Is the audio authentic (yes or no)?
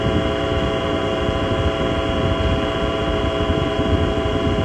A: no